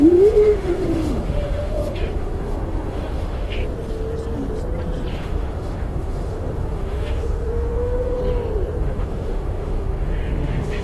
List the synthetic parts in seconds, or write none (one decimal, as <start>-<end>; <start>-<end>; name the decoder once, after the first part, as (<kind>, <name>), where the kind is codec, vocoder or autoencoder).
0.0-3.6 (autoencoder, DAC-VAE); 5.1-8.2; 8.8-10.8

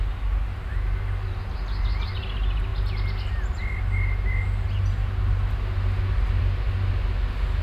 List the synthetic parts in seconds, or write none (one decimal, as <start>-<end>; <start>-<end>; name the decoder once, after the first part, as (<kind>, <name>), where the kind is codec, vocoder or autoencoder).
none

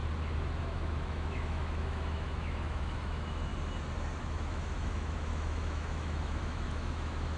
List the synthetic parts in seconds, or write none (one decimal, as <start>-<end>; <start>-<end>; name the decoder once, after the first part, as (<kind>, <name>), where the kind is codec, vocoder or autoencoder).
0.6-3.5 (autoencoder, DAC-VAE); 4.2-7.4

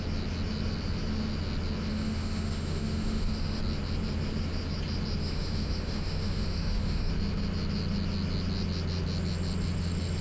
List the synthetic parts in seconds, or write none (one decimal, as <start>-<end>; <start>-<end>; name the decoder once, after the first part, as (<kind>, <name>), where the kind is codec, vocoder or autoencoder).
1.9-3.6 (autoencoder, DAC-VAE); 5.2-7.1

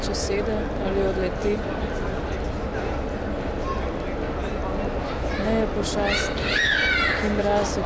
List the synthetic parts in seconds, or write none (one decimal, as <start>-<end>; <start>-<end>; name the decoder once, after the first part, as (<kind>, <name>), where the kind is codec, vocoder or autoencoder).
1.4-2.5 (vocoder, BigVGAN v2)

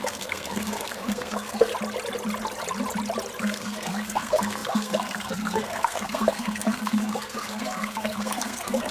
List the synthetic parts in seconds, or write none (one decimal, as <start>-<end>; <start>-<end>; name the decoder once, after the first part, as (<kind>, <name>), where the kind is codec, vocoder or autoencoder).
0.0-1.7 (codec, SNAC); 3.4-8.9

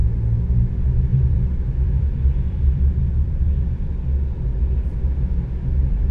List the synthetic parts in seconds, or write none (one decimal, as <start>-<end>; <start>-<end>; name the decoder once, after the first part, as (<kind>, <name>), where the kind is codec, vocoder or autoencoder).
1.1-3.9 (vocoder, BigVGAN v2); 4.5-5.0